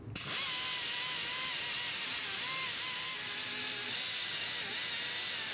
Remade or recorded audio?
recorded